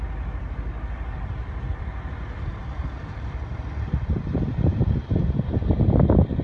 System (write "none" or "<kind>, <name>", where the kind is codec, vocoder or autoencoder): vocoder, BigVGAN v2